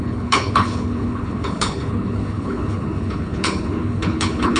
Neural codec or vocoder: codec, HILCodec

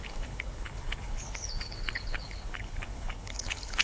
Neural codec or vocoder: codec, HILCodec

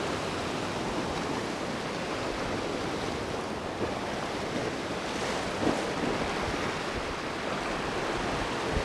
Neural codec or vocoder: none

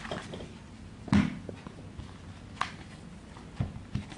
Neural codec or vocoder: none